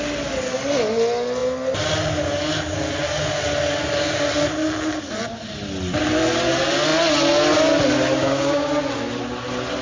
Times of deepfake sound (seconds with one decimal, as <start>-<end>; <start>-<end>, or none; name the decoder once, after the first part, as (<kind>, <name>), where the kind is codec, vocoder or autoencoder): 8.2-8.7 (codec, DAC)